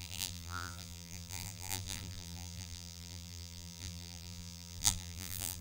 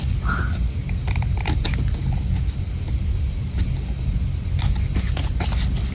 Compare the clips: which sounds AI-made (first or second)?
first